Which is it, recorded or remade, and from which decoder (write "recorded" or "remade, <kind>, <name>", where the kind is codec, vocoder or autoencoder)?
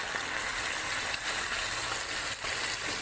recorded